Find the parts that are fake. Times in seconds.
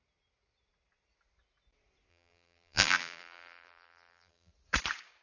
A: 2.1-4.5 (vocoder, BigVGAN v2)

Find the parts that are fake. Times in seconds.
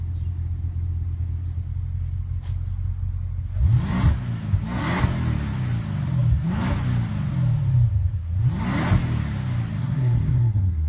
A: 9.8-10.9 (codec, SNAC)